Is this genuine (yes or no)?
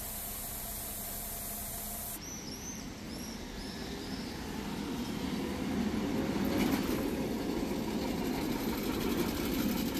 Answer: yes